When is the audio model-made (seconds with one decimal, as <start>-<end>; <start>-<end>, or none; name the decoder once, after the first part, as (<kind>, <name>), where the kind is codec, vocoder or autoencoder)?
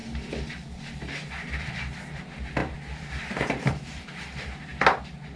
0.0-4.7 (vocoder, BigVGAN v2)